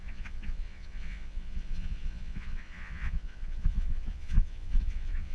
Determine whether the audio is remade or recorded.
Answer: remade